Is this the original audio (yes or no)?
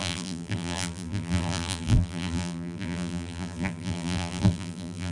no